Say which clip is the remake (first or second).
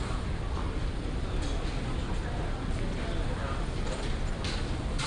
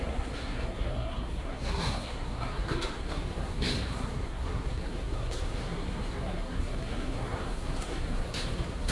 second